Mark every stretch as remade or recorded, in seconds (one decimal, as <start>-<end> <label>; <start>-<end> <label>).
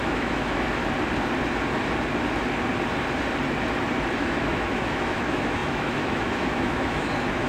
0.0-0.8 remade; 0.8-4.2 recorded; 4.2-7.5 remade